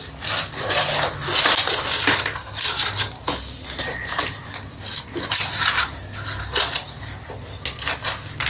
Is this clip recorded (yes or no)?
yes